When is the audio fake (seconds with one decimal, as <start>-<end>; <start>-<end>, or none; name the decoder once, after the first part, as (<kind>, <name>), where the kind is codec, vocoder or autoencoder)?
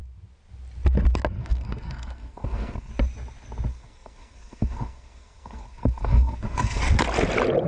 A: 1.4-2.9 (codec, SNAC); 3.7-6.8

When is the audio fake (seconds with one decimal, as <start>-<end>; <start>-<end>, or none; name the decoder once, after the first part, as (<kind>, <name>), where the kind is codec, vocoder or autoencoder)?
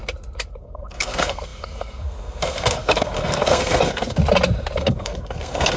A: 0.6-4.2 (codec, SNAC); 4.8-5.8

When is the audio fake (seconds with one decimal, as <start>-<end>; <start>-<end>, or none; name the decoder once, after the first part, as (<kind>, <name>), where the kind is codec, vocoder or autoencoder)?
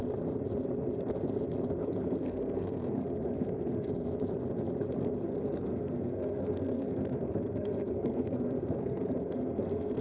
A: 1.8-3.9 (codec, SNAC); 5.3-10.0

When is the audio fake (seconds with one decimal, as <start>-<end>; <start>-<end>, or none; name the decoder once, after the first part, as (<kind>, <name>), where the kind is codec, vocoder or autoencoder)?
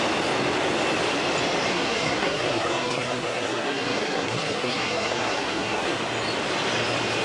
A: 1.7-6.0 (codec, SNAC)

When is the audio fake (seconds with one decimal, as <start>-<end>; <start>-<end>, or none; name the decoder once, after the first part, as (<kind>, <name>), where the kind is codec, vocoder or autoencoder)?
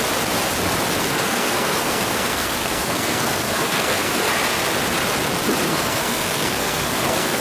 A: 1.0-4.3 (codec, SNAC); 5.7-7.4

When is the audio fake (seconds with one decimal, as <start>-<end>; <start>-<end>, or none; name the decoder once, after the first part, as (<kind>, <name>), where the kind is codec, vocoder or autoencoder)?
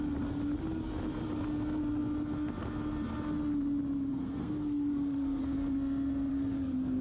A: 4.1-5.4 (codec, SNAC); 6.3-7.0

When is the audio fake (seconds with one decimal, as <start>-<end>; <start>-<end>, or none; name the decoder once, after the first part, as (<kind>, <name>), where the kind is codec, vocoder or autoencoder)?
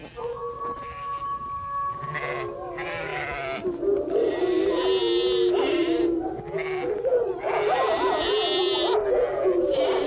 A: none